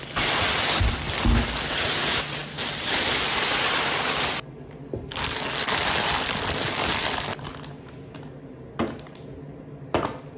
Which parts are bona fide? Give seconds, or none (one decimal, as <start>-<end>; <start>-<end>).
0.0-10.4